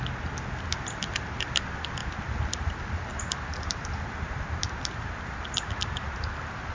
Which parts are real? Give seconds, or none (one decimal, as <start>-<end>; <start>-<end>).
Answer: 0.0-6.7